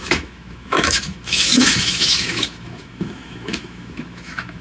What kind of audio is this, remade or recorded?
remade